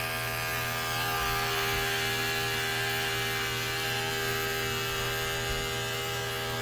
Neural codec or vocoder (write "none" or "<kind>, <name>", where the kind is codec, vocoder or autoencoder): none